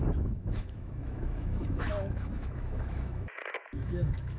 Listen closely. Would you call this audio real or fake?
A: fake